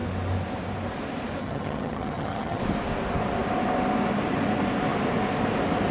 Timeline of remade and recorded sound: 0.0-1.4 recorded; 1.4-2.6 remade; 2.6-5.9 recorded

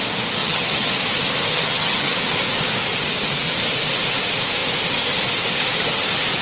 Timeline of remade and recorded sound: 0.0-0.4 recorded; 0.4-0.9 remade; 0.9-1.5 recorded; 1.5-2.1 remade; 2.1-6.4 recorded

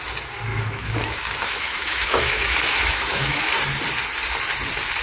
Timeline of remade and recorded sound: 0.0-0.5 recorded; 0.5-3.5 remade; 3.5-5.0 recorded

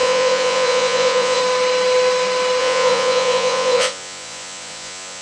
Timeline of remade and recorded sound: 0.0-1.4 remade; 1.4-2.6 recorded; 2.6-5.2 remade

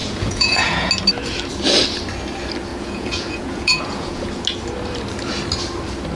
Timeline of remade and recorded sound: 0.0-0.9 remade; 0.9-2.7 recorded; 2.7-4.3 remade; 4.3-6.2 recorded

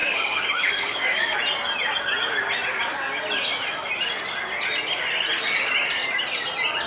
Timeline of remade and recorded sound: 0.0-1.4 remade; 1.4-6.9 recorded